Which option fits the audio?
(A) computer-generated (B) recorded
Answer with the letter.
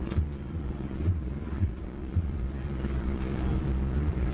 A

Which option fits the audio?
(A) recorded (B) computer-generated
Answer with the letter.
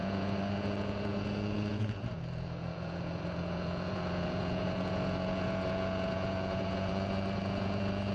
B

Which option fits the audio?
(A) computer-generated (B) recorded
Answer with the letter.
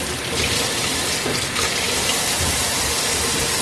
B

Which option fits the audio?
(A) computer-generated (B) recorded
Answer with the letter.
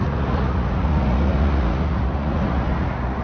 A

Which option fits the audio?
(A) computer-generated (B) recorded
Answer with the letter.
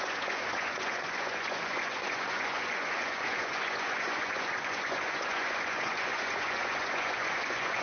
A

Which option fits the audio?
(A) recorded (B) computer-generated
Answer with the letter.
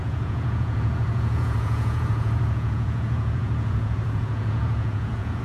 B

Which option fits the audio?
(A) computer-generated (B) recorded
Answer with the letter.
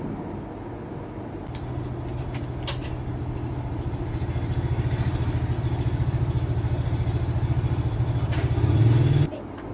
B